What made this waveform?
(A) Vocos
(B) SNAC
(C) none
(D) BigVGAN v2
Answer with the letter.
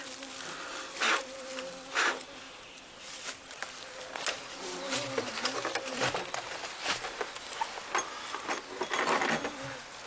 C